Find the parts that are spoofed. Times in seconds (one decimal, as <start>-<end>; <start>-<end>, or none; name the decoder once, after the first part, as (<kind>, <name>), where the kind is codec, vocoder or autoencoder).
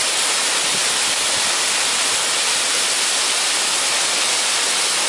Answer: none